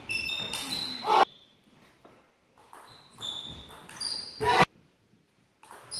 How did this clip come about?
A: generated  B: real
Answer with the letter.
B